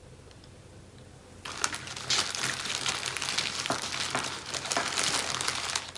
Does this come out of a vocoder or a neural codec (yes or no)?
no